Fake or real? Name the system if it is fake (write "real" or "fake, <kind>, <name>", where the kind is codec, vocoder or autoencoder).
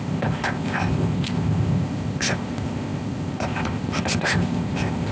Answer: fake, codec, ZipCodec